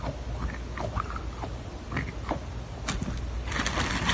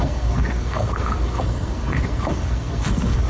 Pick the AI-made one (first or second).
second